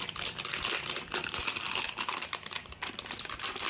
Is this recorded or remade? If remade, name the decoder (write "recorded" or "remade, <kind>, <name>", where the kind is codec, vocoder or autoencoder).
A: recorded